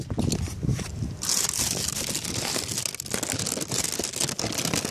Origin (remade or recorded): recorded